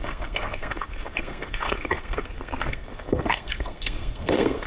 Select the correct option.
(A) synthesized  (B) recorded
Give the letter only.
A